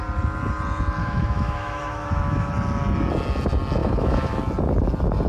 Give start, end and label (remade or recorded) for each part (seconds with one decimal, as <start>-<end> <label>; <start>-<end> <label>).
0.0-1.0 recorded; 1.0-2.5 remade; 2.5-3.8 recorded; 3.8-4.4 remade; 4.4-5.3 recorded